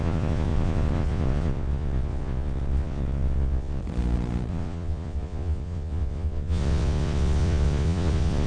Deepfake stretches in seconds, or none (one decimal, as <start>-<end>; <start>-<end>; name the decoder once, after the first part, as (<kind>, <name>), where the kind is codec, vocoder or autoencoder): 0.0-3.8 (vocoder, Vocos); 4.5-8.5

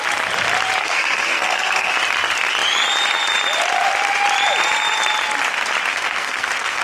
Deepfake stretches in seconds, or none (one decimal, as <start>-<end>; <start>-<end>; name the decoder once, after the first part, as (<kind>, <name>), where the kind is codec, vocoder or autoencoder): 0.8-1.9 (codec, SNAC); 5.9-6.8

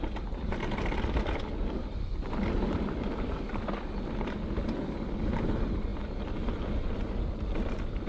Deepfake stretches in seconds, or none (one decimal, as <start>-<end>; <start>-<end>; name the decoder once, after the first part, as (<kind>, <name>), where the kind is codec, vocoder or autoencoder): none

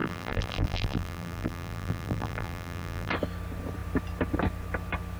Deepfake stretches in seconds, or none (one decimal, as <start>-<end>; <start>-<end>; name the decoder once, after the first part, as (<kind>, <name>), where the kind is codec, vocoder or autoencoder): 0.0-3.1 (vocoder, BigVGAN v2)

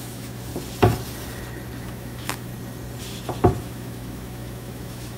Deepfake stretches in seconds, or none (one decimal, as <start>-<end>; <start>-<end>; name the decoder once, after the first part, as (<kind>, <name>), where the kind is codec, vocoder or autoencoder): 0.0-0.5 (autoencoder, DAC-VAE); 1.8-2.5; 3.6-5.2

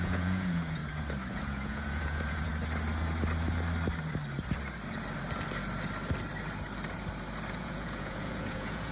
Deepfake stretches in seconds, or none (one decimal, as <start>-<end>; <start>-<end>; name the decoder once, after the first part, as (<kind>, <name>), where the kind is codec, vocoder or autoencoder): 0.0-0.8 (vocoder, Vocos); 1.3-2.5; 7.5-8.9